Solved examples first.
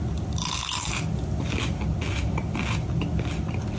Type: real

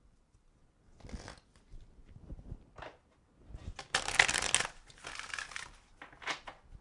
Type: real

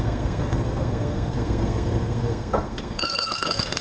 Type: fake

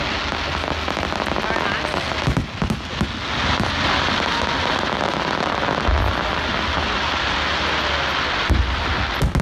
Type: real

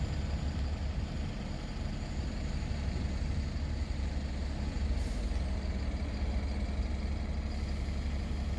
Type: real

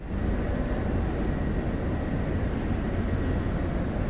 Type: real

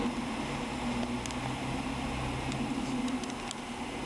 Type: real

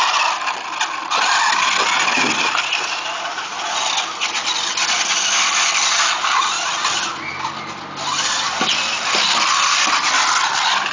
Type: real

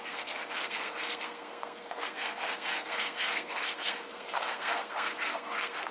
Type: fake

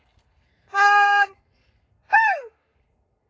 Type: fake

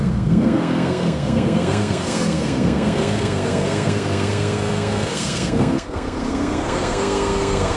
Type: fake